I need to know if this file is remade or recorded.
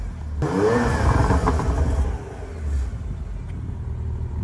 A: recorded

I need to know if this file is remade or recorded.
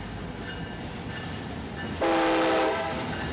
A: recorded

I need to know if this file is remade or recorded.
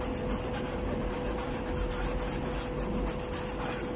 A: recorded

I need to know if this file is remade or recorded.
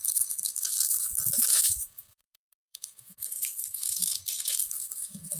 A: remade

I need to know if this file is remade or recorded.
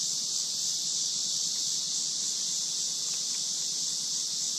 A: recorded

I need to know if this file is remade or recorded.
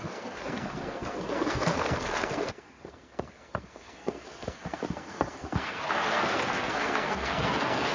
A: remade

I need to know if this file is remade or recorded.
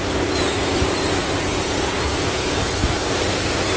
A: recorded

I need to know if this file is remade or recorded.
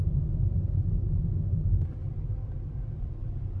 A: recorded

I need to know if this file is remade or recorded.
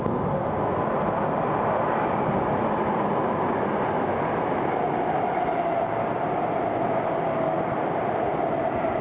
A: recorded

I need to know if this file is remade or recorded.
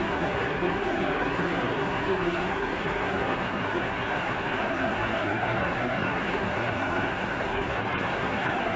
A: remade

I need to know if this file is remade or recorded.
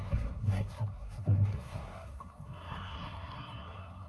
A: remade